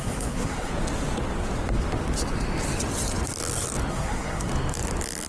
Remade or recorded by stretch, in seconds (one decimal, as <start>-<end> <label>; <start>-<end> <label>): 0.0-0.7 remade; 0.7-3.9 recorded; 3.9-4.5 remade; 4.5-5.3 recorded

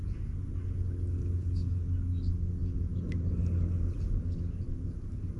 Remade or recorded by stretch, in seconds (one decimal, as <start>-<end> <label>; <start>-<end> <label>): 0.0-5.4 recorded

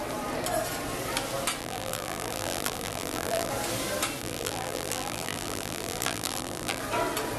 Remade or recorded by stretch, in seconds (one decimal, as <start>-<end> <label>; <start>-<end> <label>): 0.0-1.6 recorded; 1.6-3.5 remade; 3.5-4.2 recorded; 4.2-6.8 remade; 6.8-7.4 recorded

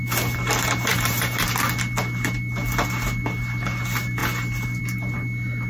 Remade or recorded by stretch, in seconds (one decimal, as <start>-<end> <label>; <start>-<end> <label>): 0.0-0.9 recorded; 0.9-1.5 remade; 1.5-5.7 recorded

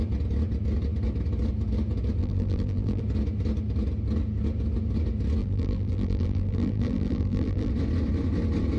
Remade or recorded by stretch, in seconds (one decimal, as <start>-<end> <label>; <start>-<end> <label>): 0.0-2.2 recorded; 2.2-3.0 remade; 3.0-5.4 recorded; 5.4-7.7 remade; 7.7-8.8 recorded

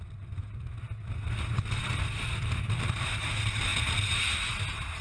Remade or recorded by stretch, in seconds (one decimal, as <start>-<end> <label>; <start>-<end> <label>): 0.0-5.0 recorded

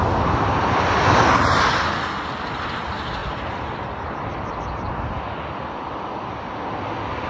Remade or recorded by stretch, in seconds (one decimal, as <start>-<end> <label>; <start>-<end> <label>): 0.0-7.3 recorded